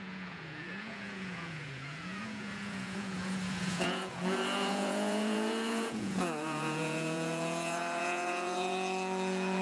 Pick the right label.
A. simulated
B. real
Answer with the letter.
A